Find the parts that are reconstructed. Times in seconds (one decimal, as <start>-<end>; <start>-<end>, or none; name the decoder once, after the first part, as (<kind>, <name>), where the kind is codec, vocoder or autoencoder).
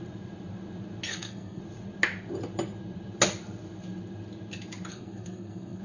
1.1-1.6 (codec, SNAC); 4.9-5.8